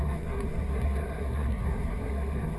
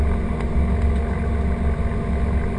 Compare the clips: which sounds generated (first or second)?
first